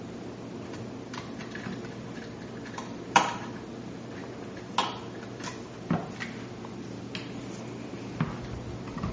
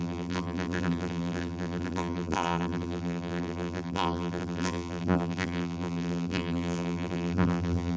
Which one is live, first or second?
first